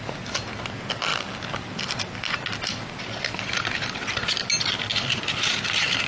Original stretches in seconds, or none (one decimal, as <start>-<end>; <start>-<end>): 0.0-6.1

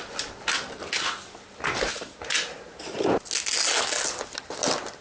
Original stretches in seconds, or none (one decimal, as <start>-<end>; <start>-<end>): 0.0-5.0